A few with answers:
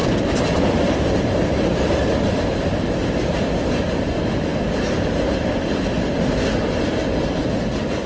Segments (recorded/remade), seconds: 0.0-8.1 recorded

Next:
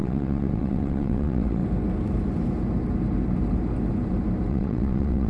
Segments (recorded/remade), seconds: 0.0-1.6 remade; 1.6-4.5 recorded; 4.5-5.3 remade